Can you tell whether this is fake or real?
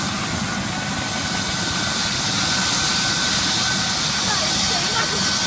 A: real